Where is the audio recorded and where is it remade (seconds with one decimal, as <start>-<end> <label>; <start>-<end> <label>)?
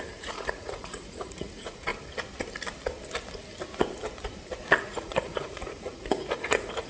0.0-1.9 remade; 1.9-4.8 recorded; 4.8-6.9 remade